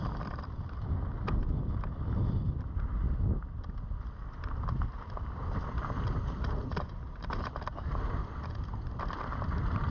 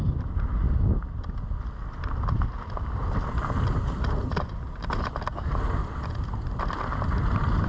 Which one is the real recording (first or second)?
second